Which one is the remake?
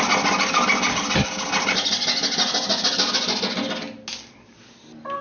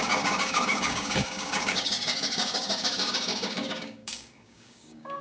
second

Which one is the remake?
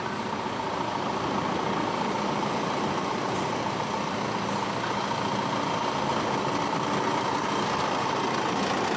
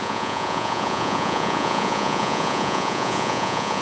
second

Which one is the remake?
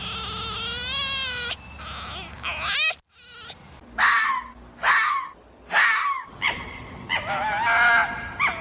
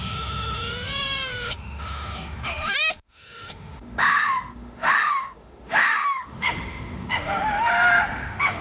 second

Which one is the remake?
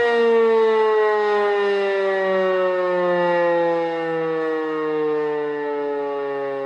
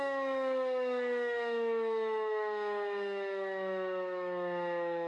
second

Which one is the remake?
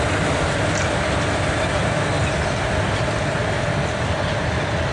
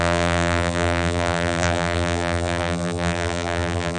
second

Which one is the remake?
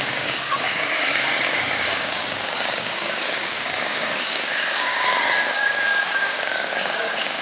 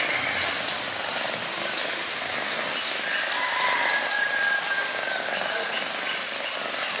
first